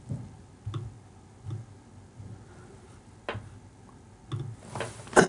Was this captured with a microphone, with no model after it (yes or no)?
yes